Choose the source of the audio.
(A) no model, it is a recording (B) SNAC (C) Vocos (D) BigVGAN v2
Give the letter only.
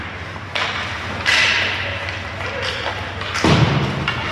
A